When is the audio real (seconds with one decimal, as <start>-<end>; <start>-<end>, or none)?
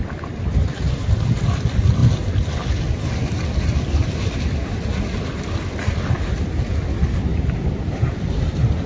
0.0-7.3; 8.2-8.9